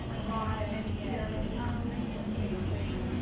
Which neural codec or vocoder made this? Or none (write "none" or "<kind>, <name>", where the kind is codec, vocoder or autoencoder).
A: none